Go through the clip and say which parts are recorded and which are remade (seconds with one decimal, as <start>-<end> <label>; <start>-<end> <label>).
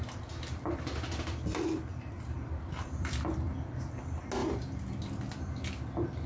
0.0-1.9 recorded; 1.9-3.8 remade; 3.8-4.4 recorded; 4.4-4.9 remade; 4.9-6.3 recorded